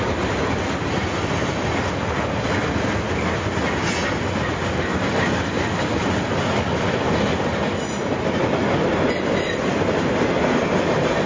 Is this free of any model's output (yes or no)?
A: yes